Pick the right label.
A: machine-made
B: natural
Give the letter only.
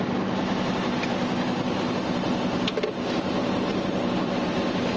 B